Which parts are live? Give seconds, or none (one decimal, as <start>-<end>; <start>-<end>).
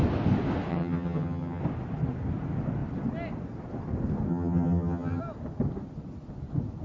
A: 0.0-0.7; 1.6-4.3; 5.2-6.8